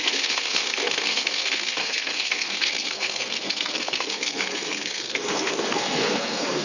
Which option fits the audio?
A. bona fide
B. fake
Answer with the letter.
B